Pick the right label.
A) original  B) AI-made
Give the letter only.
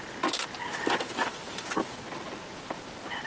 A